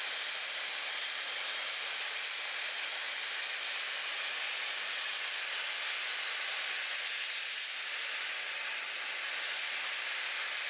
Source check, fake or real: real